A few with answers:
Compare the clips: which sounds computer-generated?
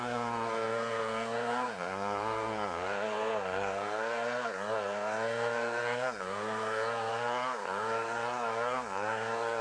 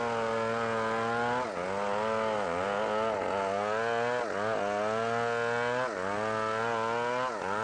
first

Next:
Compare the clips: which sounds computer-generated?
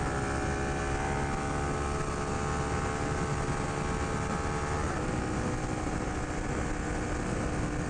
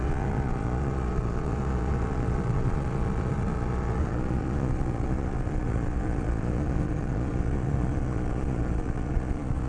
second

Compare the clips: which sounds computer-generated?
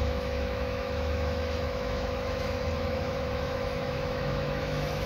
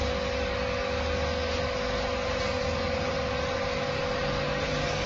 first